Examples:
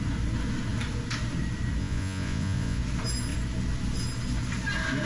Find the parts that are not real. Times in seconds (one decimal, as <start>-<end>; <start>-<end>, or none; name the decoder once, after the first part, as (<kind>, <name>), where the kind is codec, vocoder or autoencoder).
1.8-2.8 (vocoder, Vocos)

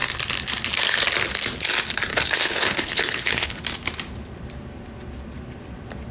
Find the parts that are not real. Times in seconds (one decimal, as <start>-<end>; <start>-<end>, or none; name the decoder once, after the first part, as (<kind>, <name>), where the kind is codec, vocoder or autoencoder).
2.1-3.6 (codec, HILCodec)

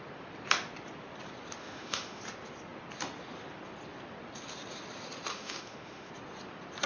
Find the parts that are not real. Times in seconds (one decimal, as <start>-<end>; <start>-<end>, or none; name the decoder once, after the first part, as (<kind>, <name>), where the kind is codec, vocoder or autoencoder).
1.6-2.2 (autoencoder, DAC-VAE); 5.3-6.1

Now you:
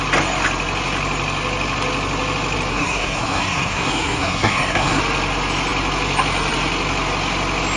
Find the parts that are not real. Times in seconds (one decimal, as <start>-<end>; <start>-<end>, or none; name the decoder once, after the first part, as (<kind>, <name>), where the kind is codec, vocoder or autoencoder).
2.7-5.0 (codec, SNAC)